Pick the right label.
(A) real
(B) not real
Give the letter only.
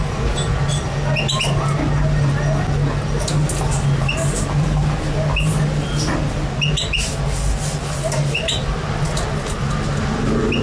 A